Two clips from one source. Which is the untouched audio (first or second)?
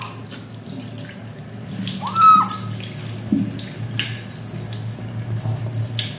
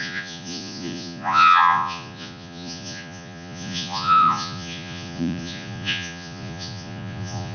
first